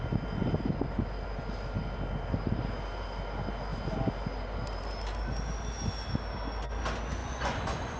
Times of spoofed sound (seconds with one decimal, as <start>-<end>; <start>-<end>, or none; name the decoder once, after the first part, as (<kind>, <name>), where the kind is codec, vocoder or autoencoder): 7.2-8.0 (vocoder, Vocos)